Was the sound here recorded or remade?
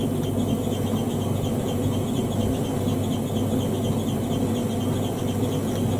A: recorded